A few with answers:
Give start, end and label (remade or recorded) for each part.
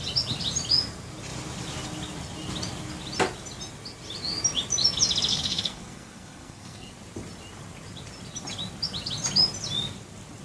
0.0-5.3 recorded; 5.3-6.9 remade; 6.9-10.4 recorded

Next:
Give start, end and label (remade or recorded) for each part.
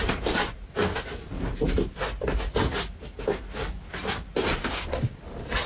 0.0-4.6 recorded; 4.6-5.1 remade; 5.1-5.7 recorded